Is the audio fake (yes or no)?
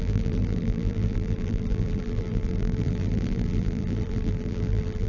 yes